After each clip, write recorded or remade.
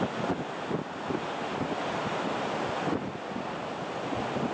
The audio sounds recorded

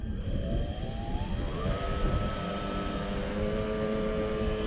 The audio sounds remade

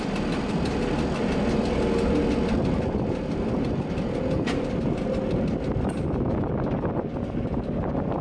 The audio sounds recorded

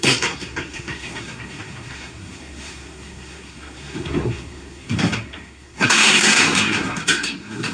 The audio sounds remade